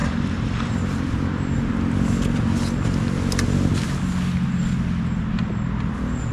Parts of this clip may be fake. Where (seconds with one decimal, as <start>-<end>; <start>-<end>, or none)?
0.0-1.7